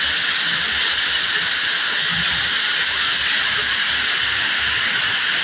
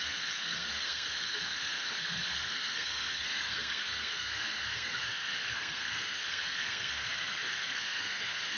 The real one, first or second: first